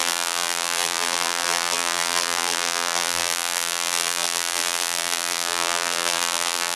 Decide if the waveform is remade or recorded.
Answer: remade